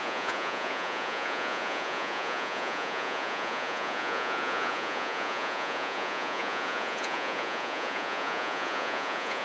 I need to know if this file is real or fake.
fake